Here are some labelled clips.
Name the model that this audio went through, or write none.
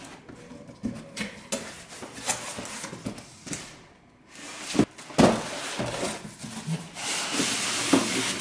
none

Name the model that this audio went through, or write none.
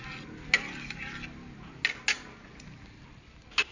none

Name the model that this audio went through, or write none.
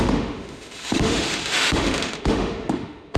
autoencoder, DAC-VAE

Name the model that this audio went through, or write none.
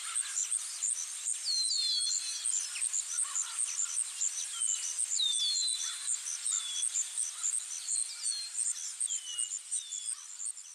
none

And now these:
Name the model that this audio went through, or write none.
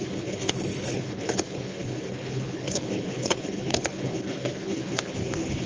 codec, HILCodec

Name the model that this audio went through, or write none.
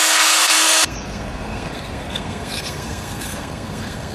codec, SNAC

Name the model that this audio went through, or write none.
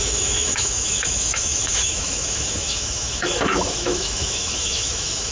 autoencoder, DAC-VAE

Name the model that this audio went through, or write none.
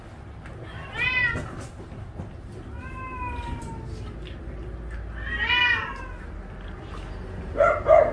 none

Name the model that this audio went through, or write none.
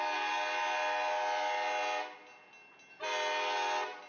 none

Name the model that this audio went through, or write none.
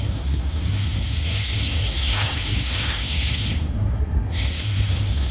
codec, SNAC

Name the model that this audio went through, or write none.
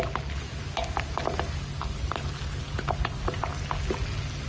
none